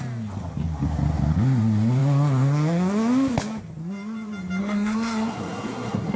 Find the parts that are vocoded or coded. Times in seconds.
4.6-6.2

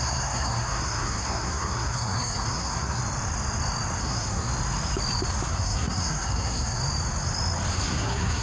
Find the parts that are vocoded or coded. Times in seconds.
0.0-3.0; 4.0-4.5; 5.5-6.8; 7.7-8.4